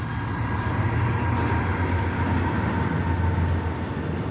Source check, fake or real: real